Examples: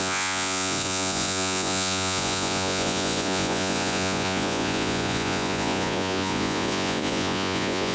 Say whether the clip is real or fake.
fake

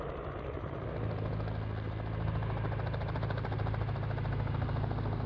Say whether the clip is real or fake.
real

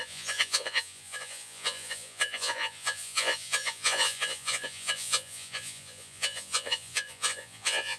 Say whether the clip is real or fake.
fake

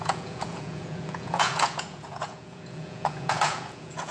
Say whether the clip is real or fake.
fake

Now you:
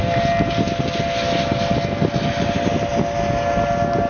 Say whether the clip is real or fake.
real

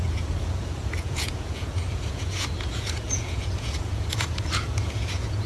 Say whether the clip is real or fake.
fake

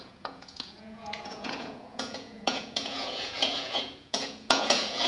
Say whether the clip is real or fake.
fake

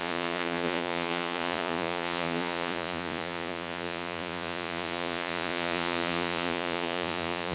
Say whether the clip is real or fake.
fake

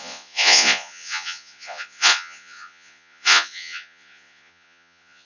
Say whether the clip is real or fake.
fake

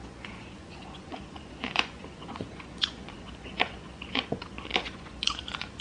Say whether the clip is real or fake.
fake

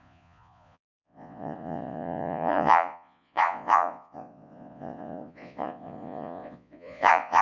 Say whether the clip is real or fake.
fake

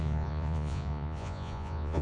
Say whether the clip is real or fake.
fake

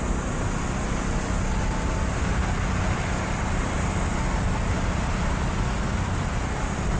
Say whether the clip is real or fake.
real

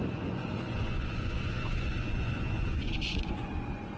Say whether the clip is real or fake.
fake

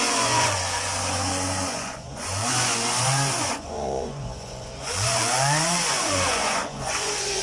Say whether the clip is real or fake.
fake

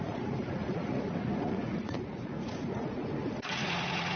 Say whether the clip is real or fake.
fake